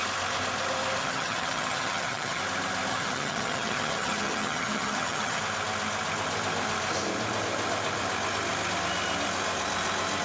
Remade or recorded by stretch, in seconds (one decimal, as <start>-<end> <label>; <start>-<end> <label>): 0.0-1.0 recorded; 1.0-2.4 remade; 2.4-2.9 recorded; 2.9-5.4 remade; 5.4-10.2 recorded